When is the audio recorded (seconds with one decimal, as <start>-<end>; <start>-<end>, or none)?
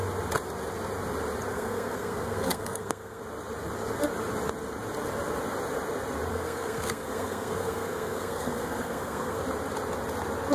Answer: 0.0-1.5; 3.2-6.3; 9.4-10.5